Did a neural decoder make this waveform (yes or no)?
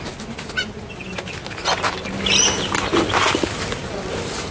no